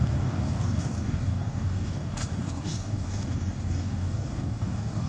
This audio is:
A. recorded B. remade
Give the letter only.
B